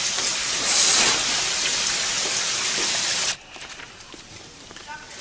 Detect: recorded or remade recorded